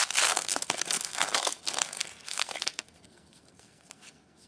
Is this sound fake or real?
fake